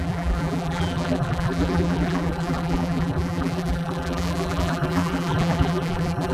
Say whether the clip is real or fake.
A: fake